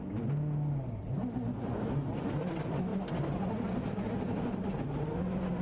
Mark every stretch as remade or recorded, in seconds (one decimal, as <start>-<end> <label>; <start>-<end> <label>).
0.0-5.6 recorded